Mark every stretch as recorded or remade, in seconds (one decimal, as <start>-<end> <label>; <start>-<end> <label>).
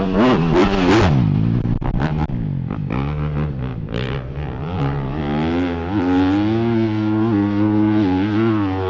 0.0-3.7 recorded; 3.7-5.2 remade; 5.2-8.9 recorded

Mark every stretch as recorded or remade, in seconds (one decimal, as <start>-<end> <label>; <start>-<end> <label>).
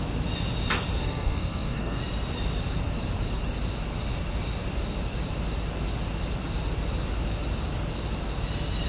0.0-0.9 recorded; 0.9-2.0 remade; 2.0-8.9 recorded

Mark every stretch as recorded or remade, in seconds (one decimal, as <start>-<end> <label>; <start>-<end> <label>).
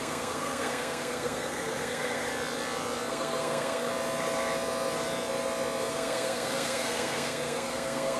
0.0-2.3 remade; 2.3-3.1 recorded; 3.1-3.9 remade; 3.9-5.9 recorded; 5.9-8.2 remade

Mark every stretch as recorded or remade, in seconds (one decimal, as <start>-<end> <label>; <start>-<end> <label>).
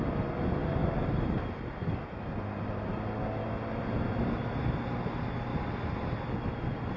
0.0-7.0 recorded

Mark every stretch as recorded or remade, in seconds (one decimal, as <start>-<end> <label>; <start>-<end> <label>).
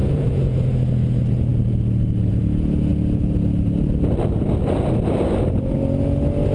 0.0-0.6 remade; 0.6-6.5 recorded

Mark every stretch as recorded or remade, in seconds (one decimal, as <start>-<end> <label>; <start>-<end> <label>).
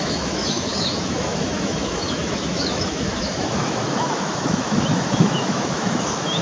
0.0-6.4 remade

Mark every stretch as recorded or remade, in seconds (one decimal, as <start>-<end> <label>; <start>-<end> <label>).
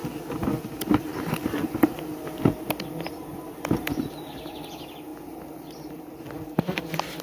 0.0-7.2 recorded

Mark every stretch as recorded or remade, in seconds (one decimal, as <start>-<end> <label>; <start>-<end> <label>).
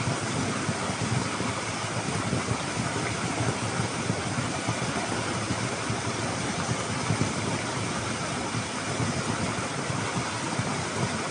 0.0-11.3 recorded